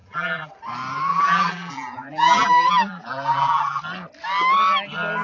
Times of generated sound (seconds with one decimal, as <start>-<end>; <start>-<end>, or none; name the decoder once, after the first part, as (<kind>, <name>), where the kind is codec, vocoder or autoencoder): 0.0-0.5 (vocoder, BigVGAN v2); 1.1-3.8